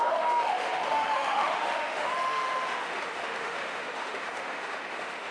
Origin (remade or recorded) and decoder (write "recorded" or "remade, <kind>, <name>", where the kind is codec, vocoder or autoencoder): remade, autoencoder, DAC-VAE